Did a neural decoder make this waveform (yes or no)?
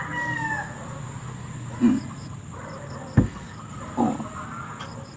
no